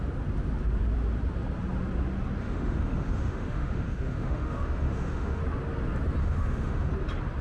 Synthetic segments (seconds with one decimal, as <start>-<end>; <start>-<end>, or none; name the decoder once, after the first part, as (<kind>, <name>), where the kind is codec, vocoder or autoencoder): 2.4-5.4 (autoencoder, DAC-VAE); 6.2-6.9